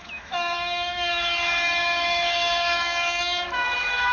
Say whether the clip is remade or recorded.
remade